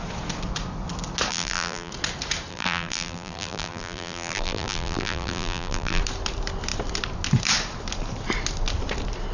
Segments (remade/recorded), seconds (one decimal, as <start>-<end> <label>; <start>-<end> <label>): 0.0-1.3 recorded; 1.3-1.9 remade; 1.9-2.5 recorded; 2.5-6.0 remade; 6.0-9.3 recorded